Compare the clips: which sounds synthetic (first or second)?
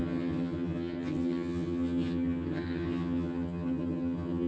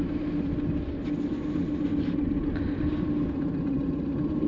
first